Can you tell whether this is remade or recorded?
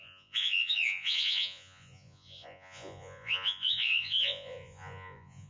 remade